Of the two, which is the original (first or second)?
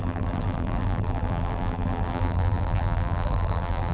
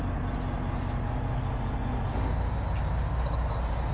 second